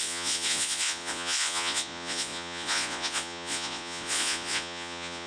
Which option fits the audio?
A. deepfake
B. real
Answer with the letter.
A